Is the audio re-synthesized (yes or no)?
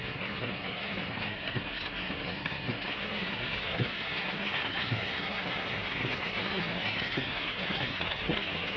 yes